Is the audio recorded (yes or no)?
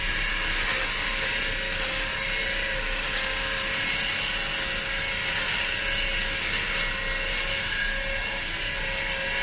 yes